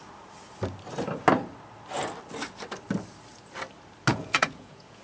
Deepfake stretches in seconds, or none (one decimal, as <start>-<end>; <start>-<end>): 4.1-5.0

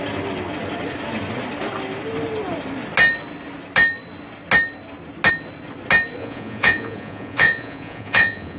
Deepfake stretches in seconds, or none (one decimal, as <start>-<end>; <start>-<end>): 6.2-8.6

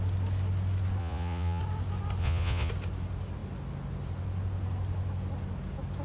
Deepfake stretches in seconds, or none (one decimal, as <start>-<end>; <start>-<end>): 1.0-1.6; 2.2-2.7

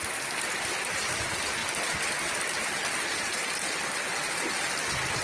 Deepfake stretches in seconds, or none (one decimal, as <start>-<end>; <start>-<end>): none

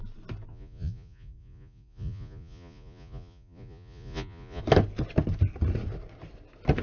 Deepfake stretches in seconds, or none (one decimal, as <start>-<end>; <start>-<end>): 0.5-4.6

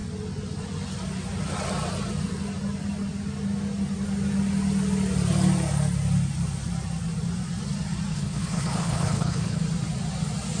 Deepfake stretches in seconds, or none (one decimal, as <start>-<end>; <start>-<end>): 8.1-9.6

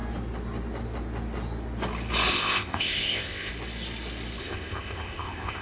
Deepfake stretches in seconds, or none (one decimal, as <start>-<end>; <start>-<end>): 2.3-3.5; 4.4-5.6